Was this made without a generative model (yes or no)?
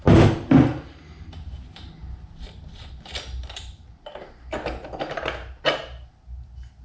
yes